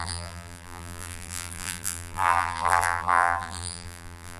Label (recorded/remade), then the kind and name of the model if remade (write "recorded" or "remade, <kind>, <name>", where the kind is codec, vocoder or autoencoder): remade, vocoder, BigVGAN v2